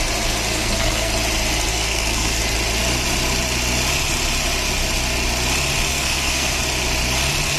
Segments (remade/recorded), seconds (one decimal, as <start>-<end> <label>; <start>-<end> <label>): 0.0-0.5 recorded; 0.5-1.1 remade; 1.1-1.7 recorded; 1.7-2.4 remade; 2.4-5.9 recorded; 5.9-6.6 remade; 6.6-7.6 recorded